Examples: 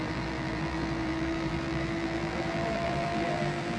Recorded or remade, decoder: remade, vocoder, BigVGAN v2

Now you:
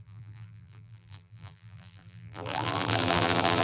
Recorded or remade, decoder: remade, vocoder, BigVGAN v2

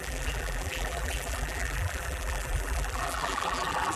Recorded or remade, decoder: remade, vocoder, BigVGAN v2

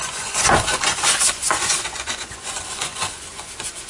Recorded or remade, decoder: remade, vocoder, Vocos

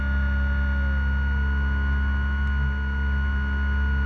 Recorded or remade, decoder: recorded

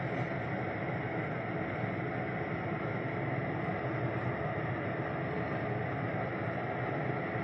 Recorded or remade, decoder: recorded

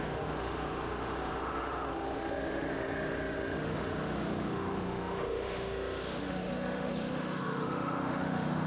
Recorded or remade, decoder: remade, autoencoder, DAC-VAE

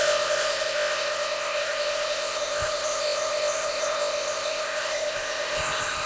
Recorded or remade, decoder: remade, codec, ZipCodec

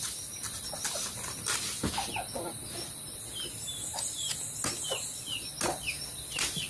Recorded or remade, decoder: recorded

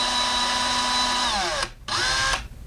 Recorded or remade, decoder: recorded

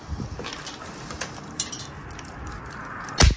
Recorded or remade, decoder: recorded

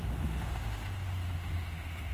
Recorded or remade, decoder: remade, autoencoder, DAC-VAE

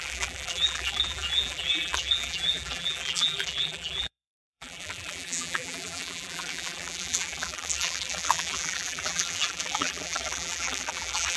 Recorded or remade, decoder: remade, vocoder, BigVGAN v2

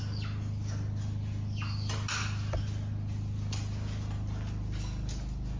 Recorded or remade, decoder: recorded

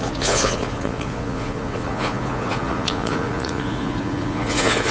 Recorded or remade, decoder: remade, vocoder, Vocos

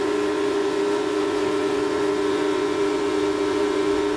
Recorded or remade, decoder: remade, vocoder, Vocos